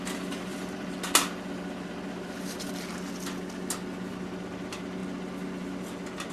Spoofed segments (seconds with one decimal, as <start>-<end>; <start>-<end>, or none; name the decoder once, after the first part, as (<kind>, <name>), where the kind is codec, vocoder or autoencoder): 0.5-1.0 (vocoder, BigVGAN v2)